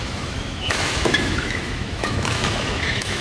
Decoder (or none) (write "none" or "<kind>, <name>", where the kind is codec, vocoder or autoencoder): autoencoder, DAC-VAE